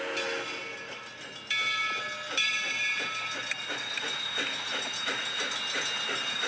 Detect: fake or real real